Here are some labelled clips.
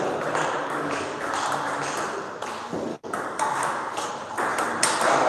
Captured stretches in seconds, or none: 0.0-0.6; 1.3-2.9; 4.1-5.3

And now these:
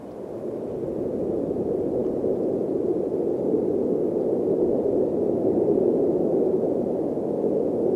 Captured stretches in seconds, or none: 0.0-8.0